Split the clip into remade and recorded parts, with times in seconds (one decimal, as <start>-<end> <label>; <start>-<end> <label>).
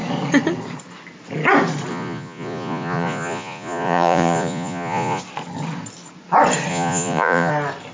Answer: 0.0-1.9 recorded; 1.9-5.2 remade; 5.2-6.7 recorded; 6.7-7.5 remade; 7.5-7.9 recorded